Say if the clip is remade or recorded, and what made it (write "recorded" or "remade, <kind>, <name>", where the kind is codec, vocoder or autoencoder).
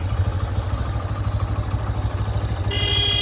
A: recorded